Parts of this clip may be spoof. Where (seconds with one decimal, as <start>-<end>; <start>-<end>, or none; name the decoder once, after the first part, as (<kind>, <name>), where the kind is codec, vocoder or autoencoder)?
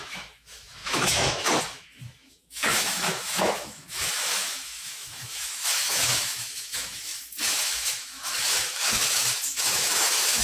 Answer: 0.0-10.4 (autoencoder, DAC-VAE)